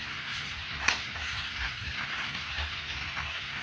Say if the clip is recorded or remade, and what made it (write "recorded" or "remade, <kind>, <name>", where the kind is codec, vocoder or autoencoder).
remade, codec, SNAC